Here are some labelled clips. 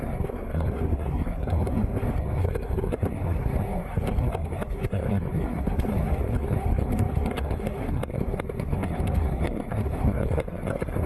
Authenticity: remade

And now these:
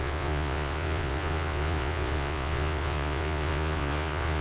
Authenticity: remade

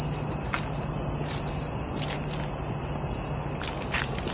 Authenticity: recorded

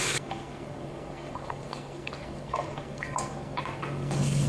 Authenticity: remade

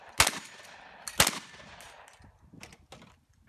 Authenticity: recorded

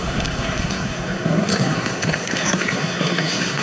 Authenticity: remade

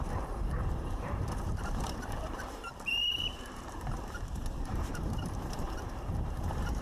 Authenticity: remade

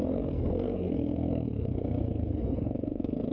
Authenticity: remade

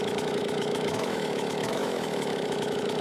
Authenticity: remade